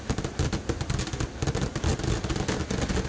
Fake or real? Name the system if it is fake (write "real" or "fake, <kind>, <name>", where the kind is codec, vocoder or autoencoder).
real